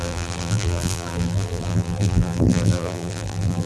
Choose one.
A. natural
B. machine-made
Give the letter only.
B